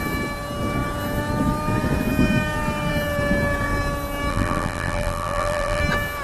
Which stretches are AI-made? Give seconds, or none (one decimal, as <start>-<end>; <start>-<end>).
4.3-5.8